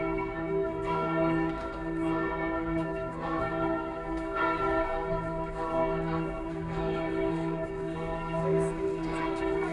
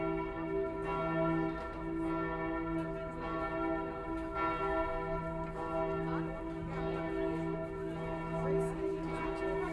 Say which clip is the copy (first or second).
first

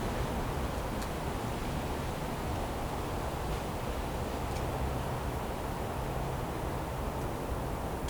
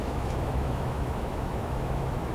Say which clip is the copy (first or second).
second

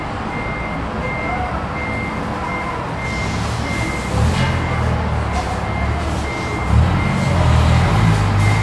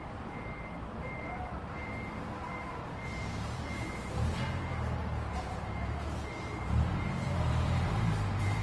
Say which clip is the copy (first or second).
second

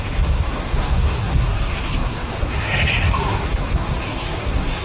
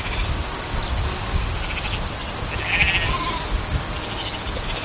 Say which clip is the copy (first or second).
first